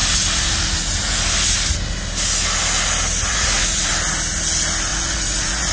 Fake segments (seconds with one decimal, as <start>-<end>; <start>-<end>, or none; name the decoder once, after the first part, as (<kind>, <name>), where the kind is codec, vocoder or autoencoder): 3.3-3.9 (vocoder, Vocos); 4.9-5.7